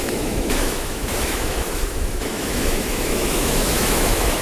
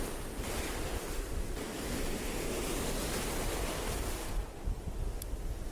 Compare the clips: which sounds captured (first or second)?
second